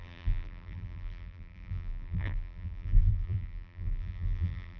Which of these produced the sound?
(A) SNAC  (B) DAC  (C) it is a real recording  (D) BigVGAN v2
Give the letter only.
D